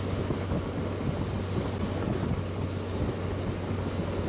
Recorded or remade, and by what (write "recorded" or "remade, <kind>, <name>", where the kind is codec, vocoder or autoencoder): recorded